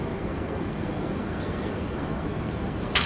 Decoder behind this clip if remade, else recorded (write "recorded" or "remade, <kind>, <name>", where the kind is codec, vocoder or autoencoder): remade, codec, SNAC